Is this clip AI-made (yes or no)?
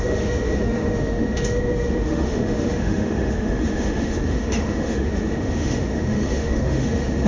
yes